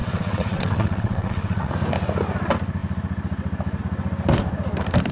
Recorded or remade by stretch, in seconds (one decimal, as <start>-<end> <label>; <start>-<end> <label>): 0.0-1.7 remade; 1.7-5.1 recorded